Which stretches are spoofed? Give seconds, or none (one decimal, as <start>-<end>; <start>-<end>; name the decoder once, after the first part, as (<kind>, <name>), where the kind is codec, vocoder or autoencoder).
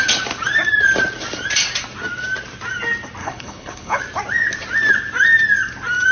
3.2-4.0 (codec, HILCodec)